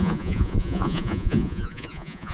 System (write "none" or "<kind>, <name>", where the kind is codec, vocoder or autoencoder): vocoder, Vocos